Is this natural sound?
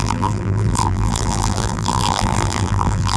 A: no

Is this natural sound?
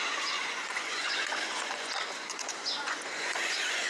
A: no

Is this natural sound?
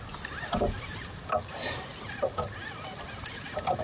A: yes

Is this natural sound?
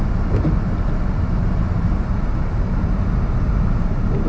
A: yes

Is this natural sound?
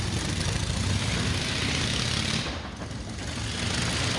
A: yes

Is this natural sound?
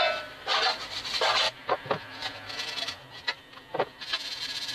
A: yes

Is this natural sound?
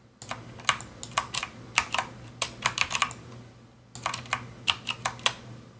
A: yes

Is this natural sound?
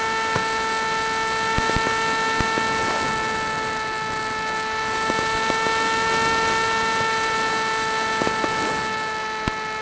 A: yes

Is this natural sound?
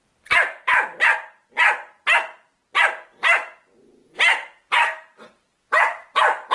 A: yes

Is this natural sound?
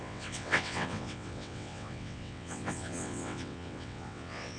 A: no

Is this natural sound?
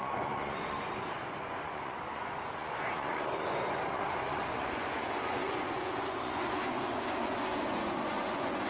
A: no